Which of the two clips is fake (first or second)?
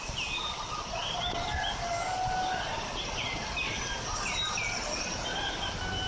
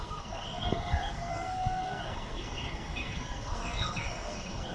second